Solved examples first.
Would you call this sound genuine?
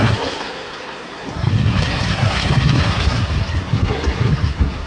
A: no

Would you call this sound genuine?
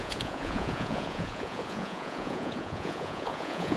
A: no